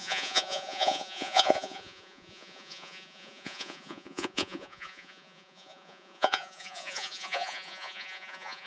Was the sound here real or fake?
fake